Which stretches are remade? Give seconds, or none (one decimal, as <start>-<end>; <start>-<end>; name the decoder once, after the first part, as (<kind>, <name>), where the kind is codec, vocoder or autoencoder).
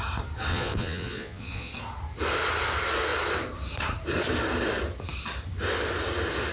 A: 0.5-1.7 (vocoder, Vocos)